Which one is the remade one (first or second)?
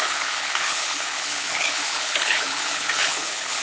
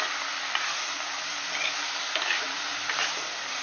first